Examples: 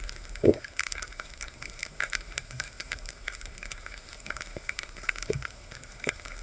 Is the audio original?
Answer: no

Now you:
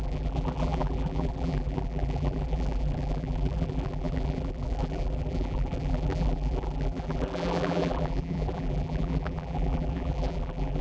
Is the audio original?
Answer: no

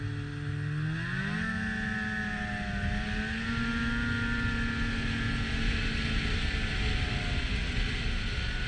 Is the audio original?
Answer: yes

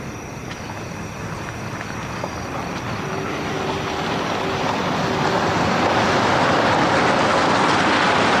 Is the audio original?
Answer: yes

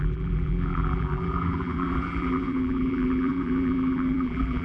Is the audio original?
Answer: no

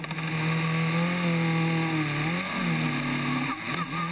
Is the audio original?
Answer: yes